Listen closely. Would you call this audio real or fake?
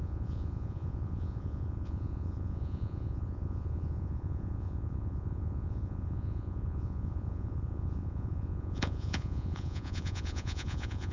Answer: fake